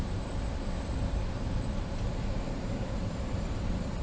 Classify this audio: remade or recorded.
remade